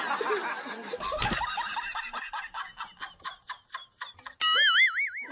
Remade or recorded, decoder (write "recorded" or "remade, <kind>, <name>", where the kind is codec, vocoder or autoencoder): recorded